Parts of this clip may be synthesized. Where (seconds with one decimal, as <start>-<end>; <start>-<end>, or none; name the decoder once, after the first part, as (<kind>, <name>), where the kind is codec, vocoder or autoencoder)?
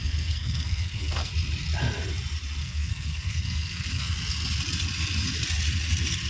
0.0-1.3 (codec, SNAC); 2.6-4.1